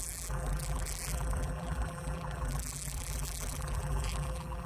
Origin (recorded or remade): remade